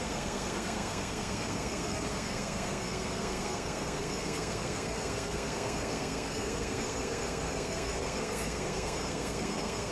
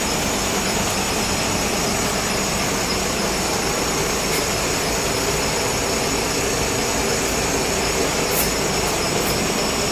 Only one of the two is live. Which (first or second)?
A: second